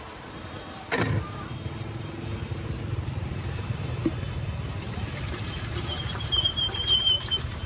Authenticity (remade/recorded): remade